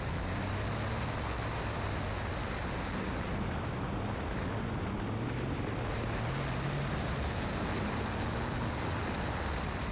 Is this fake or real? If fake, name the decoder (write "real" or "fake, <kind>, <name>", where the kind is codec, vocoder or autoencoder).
real